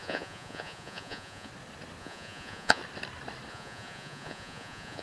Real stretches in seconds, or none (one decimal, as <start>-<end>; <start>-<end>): 1.5-2.0; 2.8-3.5